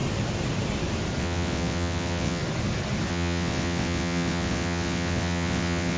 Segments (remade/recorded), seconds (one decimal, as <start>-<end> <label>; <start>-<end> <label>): 0.0-1.2 recorded; 1.2-2.4 remade; 2.4-3.1 recorded; 3.1-6.0 remade